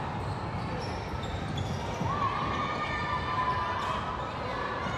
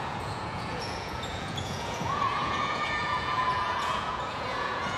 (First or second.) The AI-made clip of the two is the second